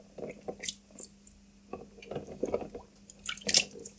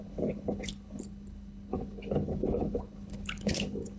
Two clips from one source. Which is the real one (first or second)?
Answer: first